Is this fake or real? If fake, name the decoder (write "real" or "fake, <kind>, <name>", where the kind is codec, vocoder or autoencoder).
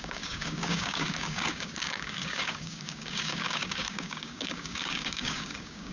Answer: fake, codec, DAC